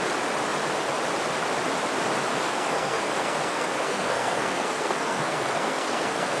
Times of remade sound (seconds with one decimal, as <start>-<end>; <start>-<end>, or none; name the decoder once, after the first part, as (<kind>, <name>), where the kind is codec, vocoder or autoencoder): 2.3-6.4 (codec, SNAC)